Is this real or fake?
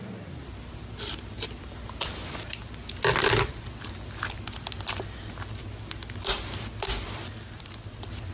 real